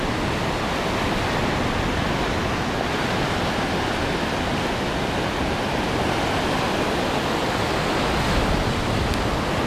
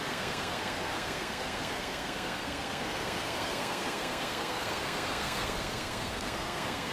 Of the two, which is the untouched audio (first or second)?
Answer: first